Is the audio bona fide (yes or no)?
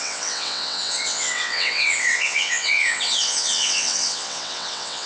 no